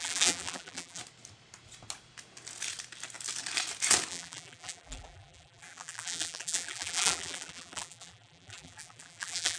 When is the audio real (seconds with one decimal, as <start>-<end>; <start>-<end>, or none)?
1.0-4.1